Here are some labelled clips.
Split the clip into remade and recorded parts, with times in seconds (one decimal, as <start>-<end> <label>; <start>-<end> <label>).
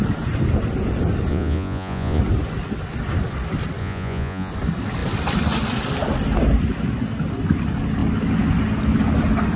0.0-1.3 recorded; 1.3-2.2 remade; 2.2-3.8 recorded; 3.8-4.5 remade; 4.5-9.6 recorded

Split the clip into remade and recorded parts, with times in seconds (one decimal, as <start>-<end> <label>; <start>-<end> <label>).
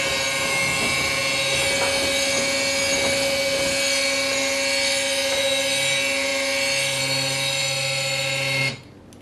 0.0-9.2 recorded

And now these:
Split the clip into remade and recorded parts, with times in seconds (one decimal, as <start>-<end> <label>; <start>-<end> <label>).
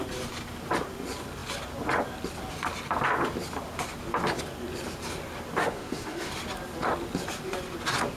0.0-5.6 recorded; 5.6-6.3 remade; 6.3-8.2 recorded